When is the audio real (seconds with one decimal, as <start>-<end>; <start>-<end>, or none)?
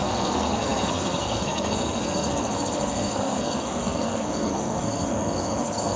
none